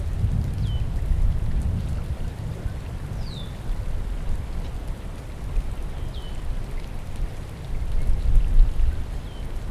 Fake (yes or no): no